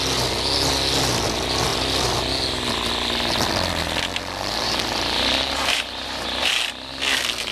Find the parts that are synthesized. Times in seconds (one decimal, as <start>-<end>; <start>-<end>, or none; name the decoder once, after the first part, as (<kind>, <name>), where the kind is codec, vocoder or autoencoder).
4.1-6.5 (vocoder, BigVGAN v2)